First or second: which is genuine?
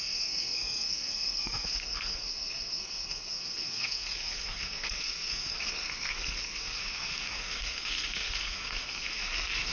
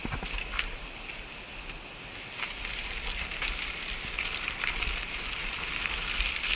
second